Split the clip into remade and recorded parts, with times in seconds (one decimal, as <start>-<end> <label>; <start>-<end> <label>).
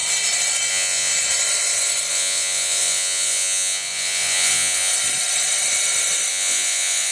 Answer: 0.0-0.7 recorded; 0.7-1.1 remade; 1.1-2.1 recorded; 2.1-4.9 remade; 4.9-6.3 recorded; 6.3-7.1 remade